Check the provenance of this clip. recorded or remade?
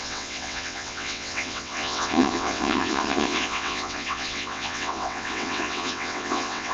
remade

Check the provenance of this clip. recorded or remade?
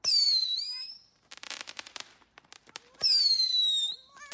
recorded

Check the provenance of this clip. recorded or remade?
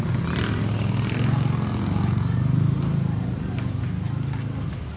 recorded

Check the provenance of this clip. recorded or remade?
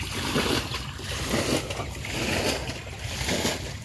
recorded